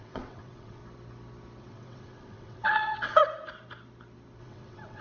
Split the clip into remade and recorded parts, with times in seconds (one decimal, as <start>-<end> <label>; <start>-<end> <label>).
0.0-0.8 remade; 0.8-1.6 recorded; 1.6-3.2 remade; 3.2-4.4 recorded; 4.4-5.0 remade